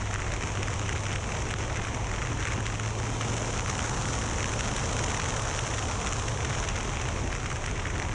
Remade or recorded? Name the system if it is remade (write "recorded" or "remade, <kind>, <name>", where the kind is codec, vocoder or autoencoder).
recorded